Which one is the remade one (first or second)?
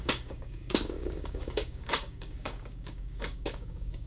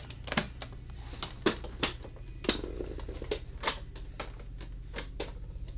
first